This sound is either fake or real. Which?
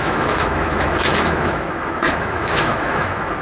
fake